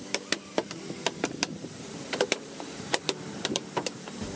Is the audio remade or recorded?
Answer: remade